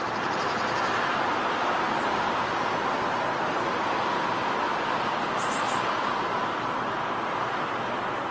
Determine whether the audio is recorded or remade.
recorded